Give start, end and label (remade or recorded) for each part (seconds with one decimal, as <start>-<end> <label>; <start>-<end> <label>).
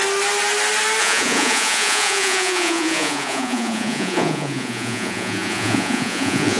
0.0-1.0 recorded; 1.0-6.6 remade